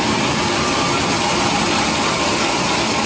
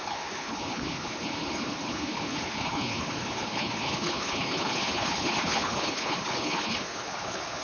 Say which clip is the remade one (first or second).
second